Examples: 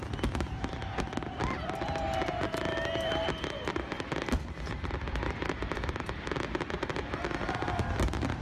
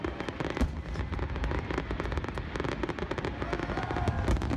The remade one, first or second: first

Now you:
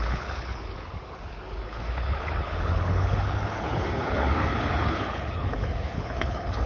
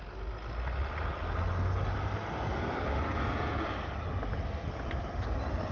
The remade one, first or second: first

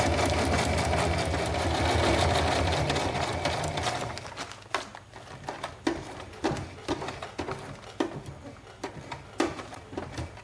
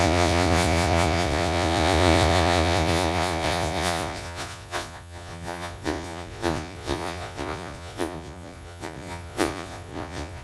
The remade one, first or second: second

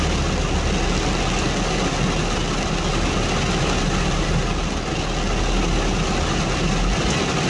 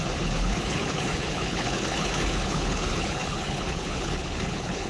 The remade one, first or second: second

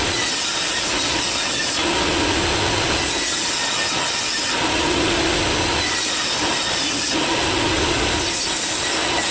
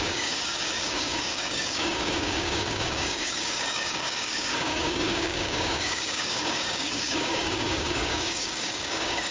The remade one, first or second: second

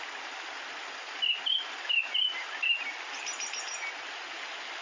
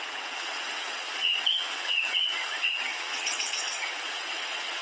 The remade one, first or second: second